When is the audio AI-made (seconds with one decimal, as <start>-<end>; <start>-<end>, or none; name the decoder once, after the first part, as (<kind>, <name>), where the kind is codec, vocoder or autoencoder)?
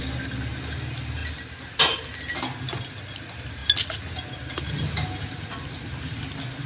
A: none